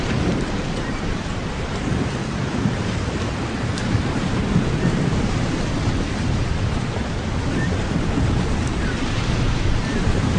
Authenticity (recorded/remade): remade